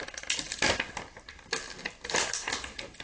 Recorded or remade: recorded